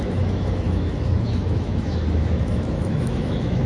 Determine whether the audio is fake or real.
fake